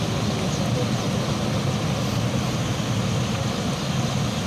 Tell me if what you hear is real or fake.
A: real